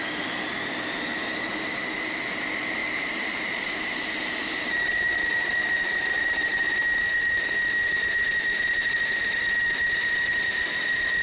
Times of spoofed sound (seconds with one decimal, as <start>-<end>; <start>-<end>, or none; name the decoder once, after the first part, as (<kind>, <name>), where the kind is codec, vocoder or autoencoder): 2.8-7.5 (vocoder, BigVGAN v2)